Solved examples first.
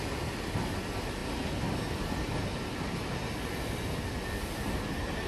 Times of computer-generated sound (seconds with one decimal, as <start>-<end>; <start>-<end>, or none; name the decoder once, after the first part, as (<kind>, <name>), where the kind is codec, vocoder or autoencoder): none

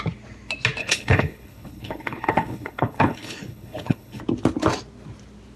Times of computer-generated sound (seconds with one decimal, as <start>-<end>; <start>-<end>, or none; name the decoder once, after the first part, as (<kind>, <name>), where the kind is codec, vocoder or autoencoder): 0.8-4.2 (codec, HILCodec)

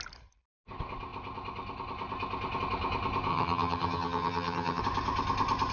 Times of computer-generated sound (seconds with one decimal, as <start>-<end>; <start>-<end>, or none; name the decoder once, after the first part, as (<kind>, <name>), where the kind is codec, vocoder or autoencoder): 3.3-4.8 (vocoder, HiFi-GAN)